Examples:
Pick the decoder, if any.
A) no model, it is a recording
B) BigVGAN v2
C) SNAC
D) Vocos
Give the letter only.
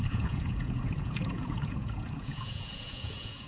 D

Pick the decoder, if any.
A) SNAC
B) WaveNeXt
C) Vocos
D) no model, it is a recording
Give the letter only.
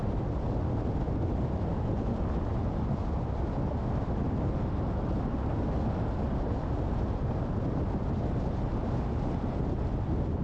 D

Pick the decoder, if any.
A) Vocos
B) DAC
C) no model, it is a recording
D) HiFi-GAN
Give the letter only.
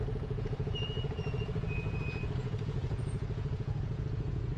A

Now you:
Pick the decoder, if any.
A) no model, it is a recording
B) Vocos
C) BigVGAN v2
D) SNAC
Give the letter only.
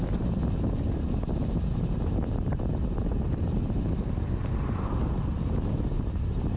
A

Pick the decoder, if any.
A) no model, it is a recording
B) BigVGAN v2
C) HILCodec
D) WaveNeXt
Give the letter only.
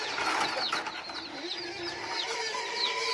A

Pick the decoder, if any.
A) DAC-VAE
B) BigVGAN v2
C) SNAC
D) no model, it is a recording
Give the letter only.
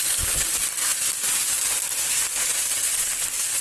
D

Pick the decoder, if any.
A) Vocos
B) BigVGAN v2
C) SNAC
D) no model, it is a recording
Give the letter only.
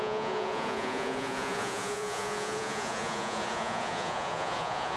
A